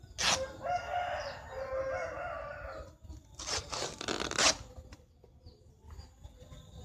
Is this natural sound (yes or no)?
yes